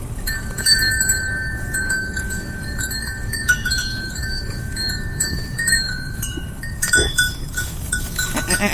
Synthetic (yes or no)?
yes